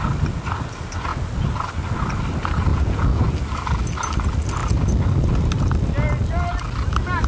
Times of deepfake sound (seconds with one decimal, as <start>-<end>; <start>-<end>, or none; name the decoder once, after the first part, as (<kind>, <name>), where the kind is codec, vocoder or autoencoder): 2.7-3.2 (vocoder, Vocos)